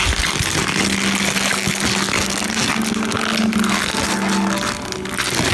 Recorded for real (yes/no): yes